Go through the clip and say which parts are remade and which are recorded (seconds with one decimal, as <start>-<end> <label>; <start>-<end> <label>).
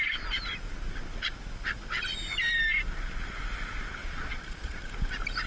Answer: 0.0-4.0 recorded; 4.0-4.8 remade; 4.8-5.5 recorded